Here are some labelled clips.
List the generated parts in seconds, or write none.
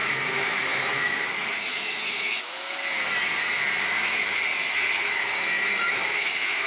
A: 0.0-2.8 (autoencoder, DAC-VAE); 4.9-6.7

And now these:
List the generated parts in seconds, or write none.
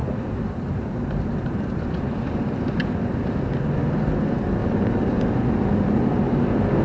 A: 0.0-2.4 (vocoder, BigVGAN v2); 4.6-5.2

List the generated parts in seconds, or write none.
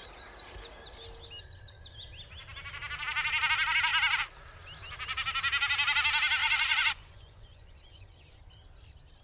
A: 6.4-8.4 (vocoder, Vocos)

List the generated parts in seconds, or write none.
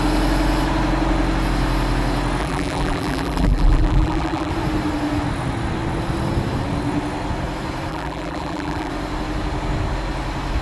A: 2.4-4.5 (vocoder, BigVGAN v2); 7.9-8.9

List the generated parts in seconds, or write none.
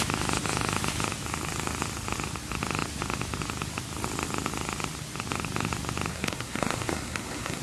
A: 6.1-7.6 (codec, SNAC)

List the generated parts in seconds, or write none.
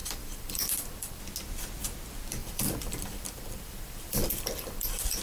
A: 0.0-1.2 (vocoder, BigVGAN v2); 2.4-5.2